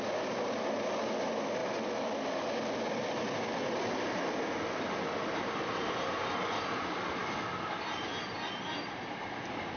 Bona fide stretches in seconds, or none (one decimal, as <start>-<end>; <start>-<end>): 0.0-9.8